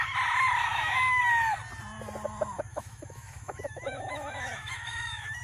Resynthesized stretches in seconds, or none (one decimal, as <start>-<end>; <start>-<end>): 0.7-1.2; 2.7-5.4